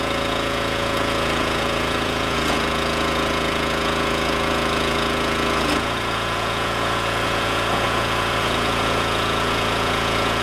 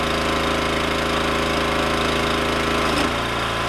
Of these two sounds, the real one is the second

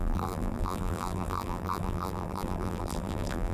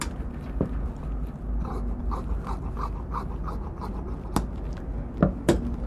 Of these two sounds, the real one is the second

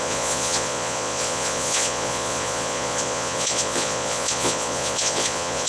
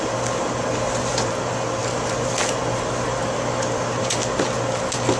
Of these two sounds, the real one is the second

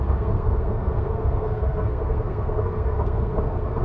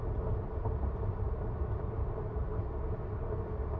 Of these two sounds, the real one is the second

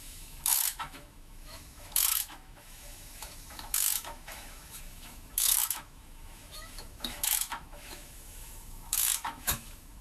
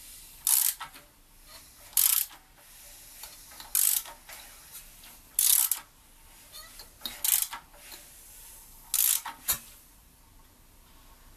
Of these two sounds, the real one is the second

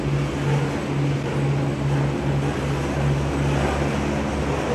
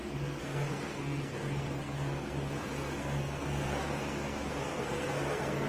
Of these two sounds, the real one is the first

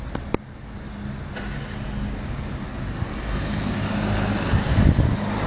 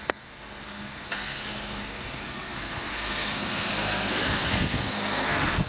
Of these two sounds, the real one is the first